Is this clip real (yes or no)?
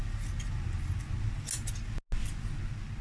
yes